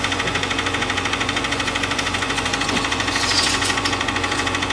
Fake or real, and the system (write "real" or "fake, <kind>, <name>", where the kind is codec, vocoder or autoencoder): fake, vocoder, Vocos